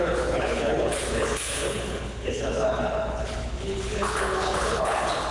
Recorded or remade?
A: remade